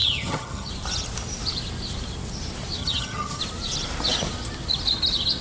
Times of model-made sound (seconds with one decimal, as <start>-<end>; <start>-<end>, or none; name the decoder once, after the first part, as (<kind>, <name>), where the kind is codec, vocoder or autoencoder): 0.0-0.7 (vocoder, HiFi-GAN); 2.8-3.4